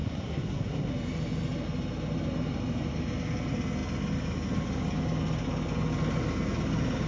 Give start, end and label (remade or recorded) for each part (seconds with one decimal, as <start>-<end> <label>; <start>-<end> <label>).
0.0-0.9 remade; 0.9-7.1 recorded